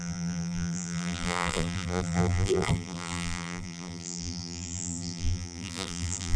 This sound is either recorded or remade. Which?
remade